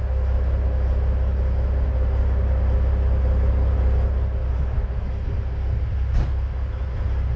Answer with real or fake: real